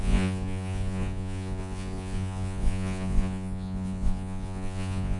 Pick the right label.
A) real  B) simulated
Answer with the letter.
B